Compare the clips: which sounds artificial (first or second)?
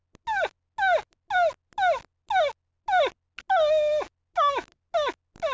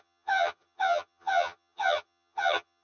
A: second